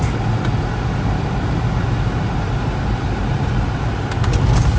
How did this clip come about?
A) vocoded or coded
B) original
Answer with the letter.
B